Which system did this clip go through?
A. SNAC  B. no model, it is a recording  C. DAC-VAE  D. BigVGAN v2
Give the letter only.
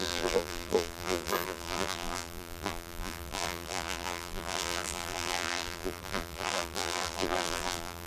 D